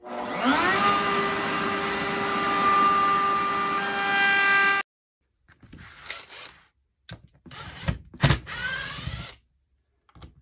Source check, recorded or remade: recorded